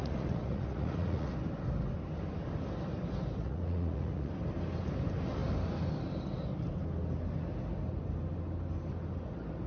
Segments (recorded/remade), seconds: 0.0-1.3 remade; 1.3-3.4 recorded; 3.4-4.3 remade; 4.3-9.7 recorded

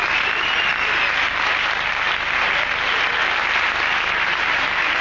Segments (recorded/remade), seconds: 0.0-5.0 recorded